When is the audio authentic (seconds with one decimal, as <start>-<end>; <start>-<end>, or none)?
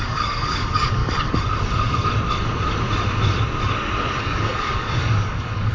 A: 1.0-4.2